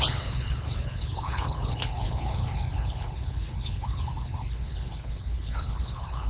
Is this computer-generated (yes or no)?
yes